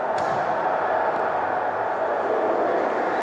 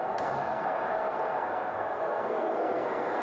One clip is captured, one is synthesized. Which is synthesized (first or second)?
second